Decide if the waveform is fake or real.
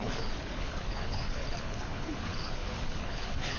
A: fake